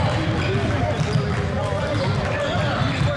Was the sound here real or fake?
real